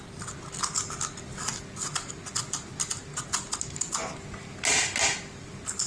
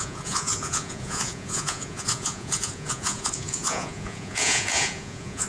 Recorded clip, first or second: first